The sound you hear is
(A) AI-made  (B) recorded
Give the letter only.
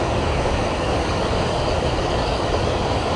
A